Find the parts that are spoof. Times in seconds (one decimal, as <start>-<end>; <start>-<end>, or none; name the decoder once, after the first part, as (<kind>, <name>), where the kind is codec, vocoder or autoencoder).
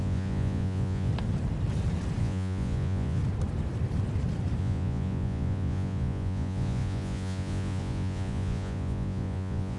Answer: 0.0-1.1 (vocoder, Vocos); 2.2-3.2; 4.6-9.8